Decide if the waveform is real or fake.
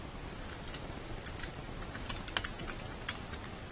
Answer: real